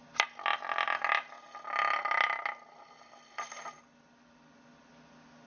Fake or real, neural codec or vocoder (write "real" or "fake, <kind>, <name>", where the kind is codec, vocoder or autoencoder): real